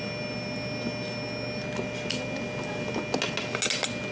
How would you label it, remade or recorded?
recorded